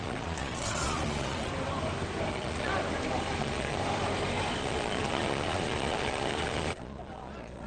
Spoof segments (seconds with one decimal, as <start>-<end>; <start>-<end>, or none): 0.0-1.5; 2.3-2.7; 3.4-3.8; 4.6-7.7